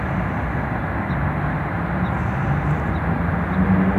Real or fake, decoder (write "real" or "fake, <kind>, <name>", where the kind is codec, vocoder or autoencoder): real